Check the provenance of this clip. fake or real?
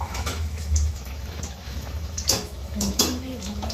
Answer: fake